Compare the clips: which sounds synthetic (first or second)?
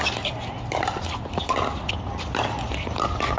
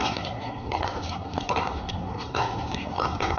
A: second